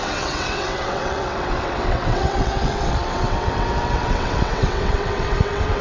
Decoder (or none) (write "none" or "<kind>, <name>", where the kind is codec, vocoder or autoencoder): vocoder, WaveNeXt